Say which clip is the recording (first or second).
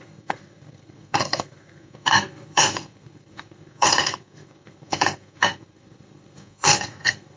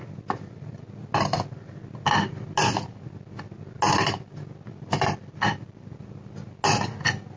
second